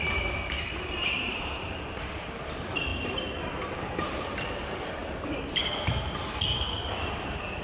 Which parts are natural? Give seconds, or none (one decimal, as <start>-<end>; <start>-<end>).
5.0-5.9

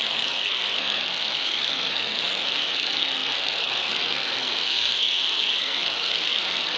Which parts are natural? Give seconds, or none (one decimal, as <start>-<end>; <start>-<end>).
none